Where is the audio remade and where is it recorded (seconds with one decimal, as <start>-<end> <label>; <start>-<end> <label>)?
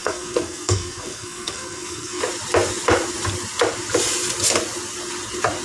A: 0.0-2.2 remade; 2.2-5.6 recorded